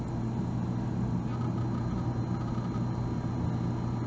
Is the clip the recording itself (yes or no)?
yes